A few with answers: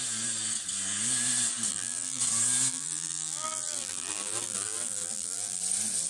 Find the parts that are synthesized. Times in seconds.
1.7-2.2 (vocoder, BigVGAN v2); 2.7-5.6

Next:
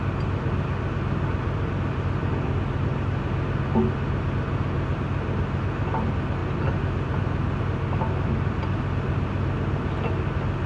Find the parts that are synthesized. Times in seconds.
none